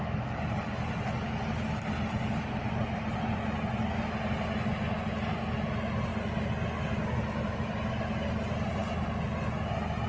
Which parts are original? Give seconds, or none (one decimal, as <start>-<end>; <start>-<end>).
0.0-10.1